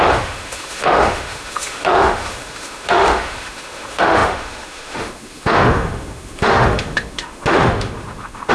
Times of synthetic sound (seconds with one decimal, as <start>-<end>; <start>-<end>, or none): 0.0-8.5

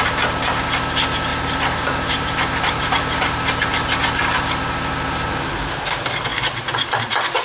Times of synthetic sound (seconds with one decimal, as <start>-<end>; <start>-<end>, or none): 1.3-3.4

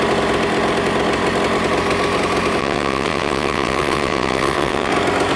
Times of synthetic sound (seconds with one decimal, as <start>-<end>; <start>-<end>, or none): 2.6-4.9